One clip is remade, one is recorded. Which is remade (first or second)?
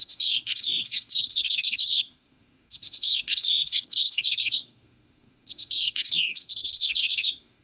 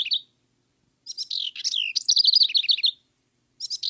first